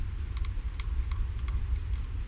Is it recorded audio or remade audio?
recorded